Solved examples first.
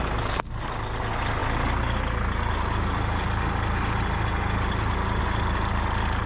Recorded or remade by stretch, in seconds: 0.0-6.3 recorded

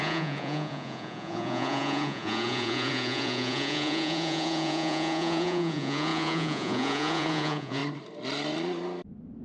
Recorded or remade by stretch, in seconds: 0.0-7.8 remade; 7.8-9.4 recorded